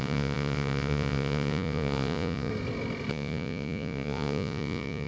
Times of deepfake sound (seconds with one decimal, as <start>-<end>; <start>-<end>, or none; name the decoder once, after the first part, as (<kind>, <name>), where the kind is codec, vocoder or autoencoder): 0.0-2.5 (vocoder, Vocos); 3.1-5.1